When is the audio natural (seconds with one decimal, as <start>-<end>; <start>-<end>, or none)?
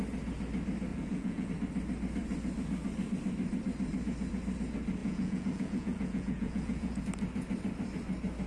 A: 0.0-0.9; 1.5-5.0; 7.0-8.5